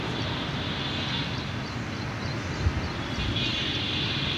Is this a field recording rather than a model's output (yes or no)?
yes